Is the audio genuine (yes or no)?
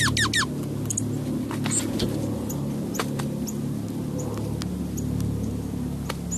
yes